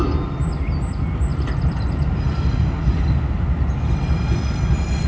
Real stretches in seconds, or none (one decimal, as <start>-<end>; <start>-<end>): 0.0-5.1